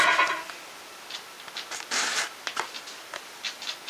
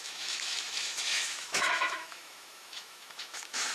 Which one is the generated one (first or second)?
second